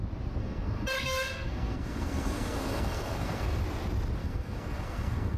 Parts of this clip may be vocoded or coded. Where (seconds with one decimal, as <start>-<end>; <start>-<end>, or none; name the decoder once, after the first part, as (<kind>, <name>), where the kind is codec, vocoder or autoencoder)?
0.4-3.6 (codec, SNAC); 4.2-5.4